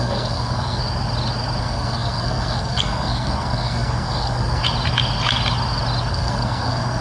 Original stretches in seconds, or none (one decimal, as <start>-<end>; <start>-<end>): 0.8-1.6; 4.6-6.1